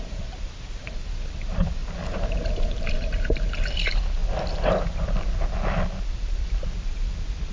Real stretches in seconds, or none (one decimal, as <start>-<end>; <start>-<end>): 1.8-2.7; 4.2-7.5